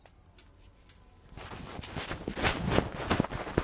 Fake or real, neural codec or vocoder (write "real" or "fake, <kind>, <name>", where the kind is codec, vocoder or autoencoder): real